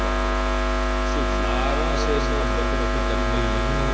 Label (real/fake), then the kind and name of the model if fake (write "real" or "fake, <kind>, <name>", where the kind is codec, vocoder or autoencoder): real